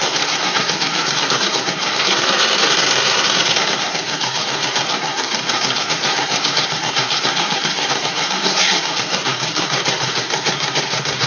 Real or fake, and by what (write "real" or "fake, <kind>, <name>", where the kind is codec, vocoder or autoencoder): fake, codec, SNAC